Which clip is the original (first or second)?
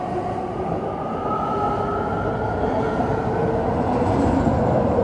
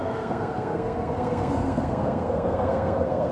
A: first